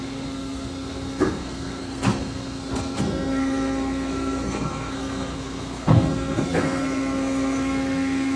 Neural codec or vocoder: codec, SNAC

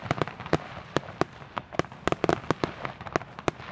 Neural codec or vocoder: none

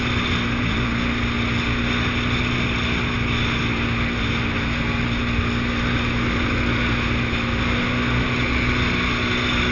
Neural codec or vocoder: none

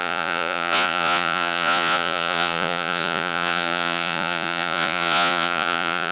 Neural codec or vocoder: vocoder, Vocos